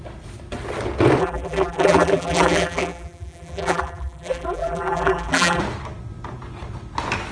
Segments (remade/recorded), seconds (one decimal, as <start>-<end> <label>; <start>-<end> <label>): 0.0-1.2 recorded; 1.2-5.6 remade; 5.6-7.3 recorded